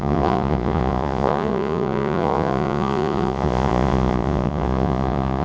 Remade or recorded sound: remade